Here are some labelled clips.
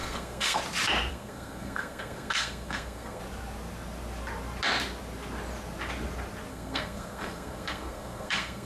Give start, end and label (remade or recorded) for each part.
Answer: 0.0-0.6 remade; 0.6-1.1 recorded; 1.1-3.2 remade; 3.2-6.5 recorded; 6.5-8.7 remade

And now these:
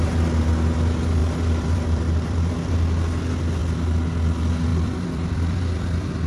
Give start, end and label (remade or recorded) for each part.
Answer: 0.0-1.2 recorded; 1.2-2.7 remade; 2.7-4.7 recorded; 4.7-6.3 remade

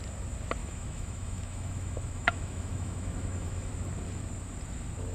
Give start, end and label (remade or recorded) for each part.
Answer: 0.0-0.6 recorded; 0.6-3.7 remade; 3.7-5.1 recorded

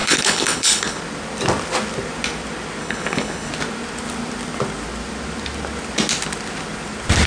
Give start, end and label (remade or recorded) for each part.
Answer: 0.0-1.0 remade; 1.0-2.8 recorded; 2.8-3.5 remade; 3.5-7.3 recorded